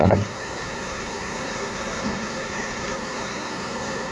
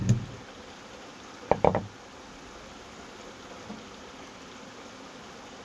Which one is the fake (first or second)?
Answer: first